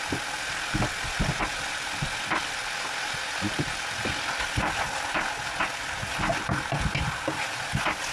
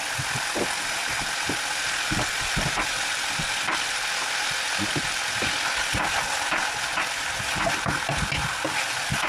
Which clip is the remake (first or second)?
second